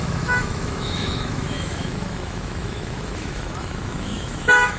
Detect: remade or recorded remade